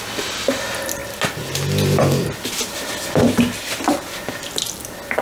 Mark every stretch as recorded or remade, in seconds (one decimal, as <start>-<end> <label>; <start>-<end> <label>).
0.0-5.2 recorded